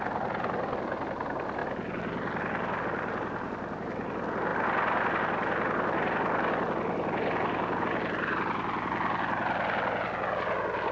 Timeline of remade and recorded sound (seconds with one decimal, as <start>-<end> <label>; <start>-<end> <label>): 0.0-10.9 recorded